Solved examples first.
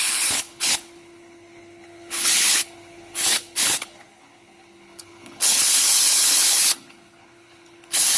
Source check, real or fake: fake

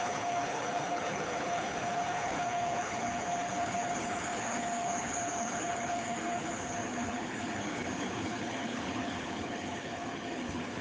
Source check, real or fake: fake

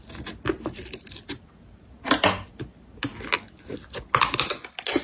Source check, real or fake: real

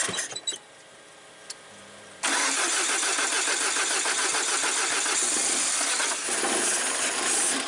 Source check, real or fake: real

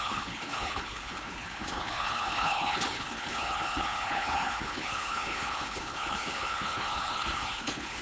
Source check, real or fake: fake